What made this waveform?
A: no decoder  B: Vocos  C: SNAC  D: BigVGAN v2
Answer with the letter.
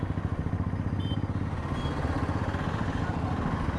A